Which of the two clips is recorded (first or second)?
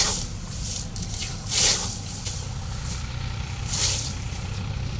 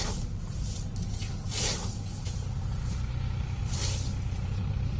second